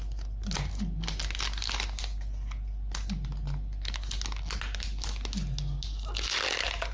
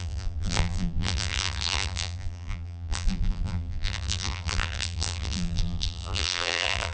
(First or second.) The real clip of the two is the first